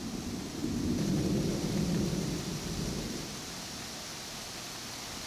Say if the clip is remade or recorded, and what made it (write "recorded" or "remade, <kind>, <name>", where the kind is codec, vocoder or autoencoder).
recorded